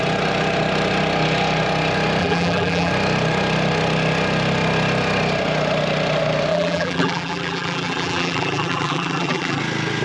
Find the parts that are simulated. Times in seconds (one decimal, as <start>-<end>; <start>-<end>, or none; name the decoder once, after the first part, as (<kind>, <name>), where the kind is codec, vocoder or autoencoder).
2.2-2.9 (vocoder, BigVGAN v2); 6.5-9.6